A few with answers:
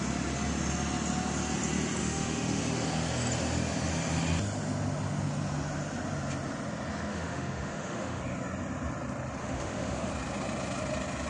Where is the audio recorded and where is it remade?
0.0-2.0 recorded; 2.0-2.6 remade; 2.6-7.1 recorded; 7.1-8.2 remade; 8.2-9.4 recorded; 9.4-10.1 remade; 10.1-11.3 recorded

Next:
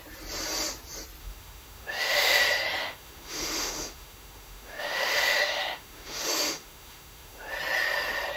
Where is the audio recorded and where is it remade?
0.0-1.2 recorded; 1.2-2.4 remade; 2.4-2.8 recorded; 2.8-7.5 remade; 7.5-8.4 recorded